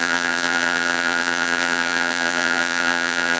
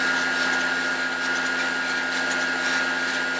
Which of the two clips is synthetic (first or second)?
first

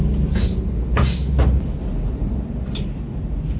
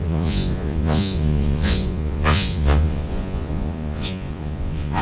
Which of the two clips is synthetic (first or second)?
second